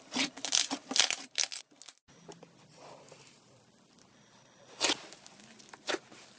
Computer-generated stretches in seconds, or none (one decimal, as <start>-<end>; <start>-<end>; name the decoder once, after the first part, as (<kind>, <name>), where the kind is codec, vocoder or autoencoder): none